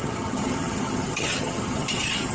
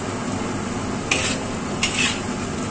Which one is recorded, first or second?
second